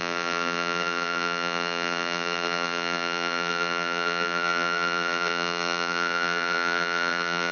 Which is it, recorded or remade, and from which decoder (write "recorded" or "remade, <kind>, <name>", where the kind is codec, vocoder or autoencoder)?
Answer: remade, vocoder, BigVGAN v2